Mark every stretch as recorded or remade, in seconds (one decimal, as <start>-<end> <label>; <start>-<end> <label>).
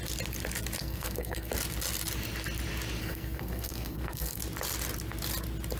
0.0-0.8 recorded; 0.8-1.5 remade; 1.5-3.0 recorded; 3.0-4.4 remade; 4.4-5.8 recorded